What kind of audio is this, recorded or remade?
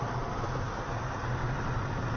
recorded